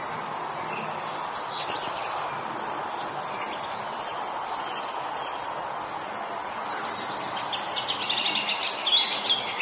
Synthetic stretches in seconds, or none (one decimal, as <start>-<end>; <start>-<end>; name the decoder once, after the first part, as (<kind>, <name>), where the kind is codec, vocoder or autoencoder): none